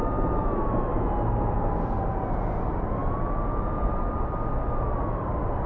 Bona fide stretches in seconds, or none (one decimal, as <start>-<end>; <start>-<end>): 0.0-5.7